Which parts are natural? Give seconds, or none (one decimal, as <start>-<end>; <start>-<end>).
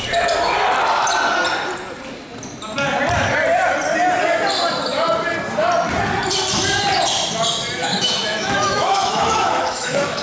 0.0-7.8